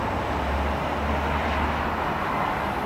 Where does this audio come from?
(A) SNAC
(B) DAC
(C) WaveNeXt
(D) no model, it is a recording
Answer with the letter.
D